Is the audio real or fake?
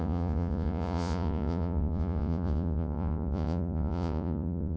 fake